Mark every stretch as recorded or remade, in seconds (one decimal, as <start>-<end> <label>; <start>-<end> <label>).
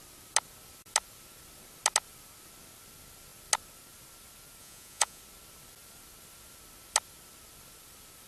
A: 0.0-4.6 recorded; 4.6-5.2 remade; 5.2-8.3 recorded